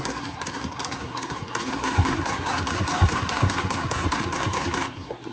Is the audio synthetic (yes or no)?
yes